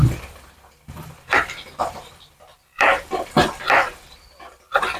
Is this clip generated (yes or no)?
yes